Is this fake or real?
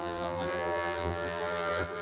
fake